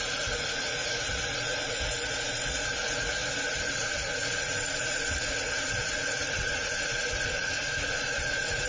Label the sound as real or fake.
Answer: fake